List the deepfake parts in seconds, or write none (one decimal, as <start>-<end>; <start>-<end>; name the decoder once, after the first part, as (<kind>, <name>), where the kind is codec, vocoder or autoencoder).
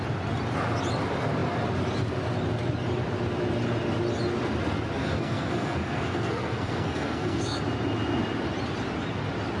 5.0-7.6 (codec, SNAC)